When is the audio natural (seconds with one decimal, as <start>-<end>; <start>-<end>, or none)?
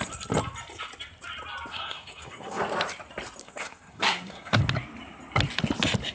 0.0-1.7; 2.6-3.4; 4.6-6.1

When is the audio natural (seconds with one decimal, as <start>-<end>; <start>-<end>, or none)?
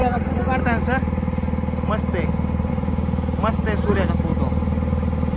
0.0-5.4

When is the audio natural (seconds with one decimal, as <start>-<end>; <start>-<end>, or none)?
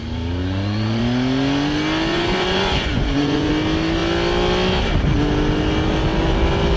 0.0-0.4; 1.0-2.1; 3.5-6.8